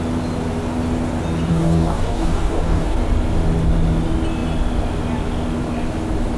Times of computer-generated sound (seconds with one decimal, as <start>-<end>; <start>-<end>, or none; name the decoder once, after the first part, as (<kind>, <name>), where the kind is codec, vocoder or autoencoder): 1.5-3.0 (codec, DAC)